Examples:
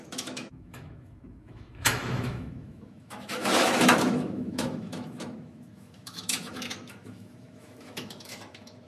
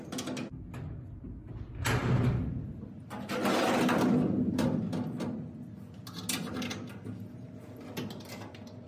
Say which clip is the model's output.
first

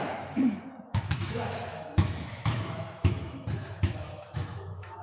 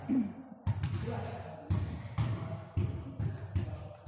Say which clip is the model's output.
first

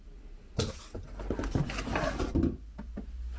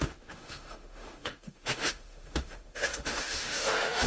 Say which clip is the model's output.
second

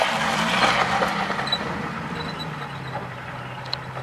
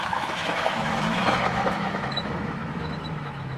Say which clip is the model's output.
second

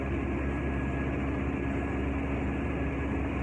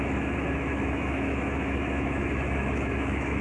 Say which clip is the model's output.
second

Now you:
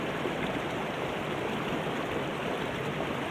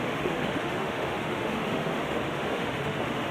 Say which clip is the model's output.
second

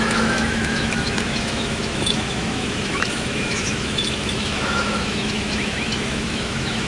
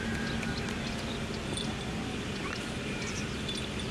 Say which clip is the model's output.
first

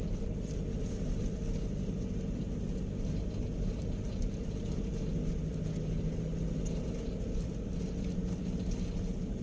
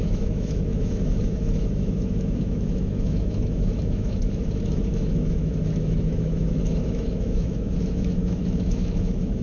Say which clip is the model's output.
second